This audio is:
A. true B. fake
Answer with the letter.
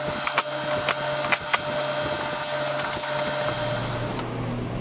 A